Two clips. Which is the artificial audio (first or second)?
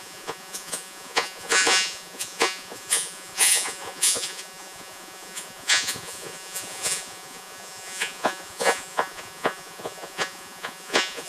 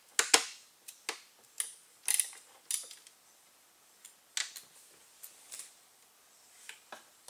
first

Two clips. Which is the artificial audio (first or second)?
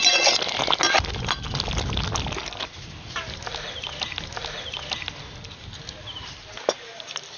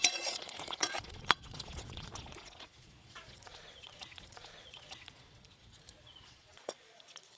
second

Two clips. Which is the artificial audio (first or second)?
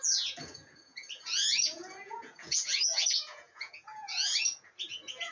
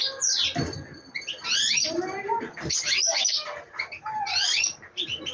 first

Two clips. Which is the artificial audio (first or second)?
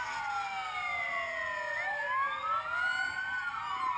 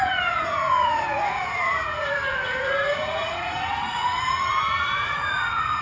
second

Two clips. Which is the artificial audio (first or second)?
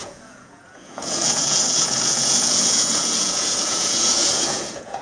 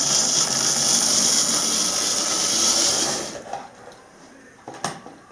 first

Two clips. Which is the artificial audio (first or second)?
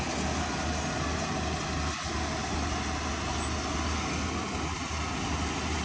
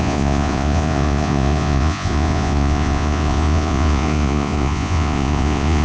second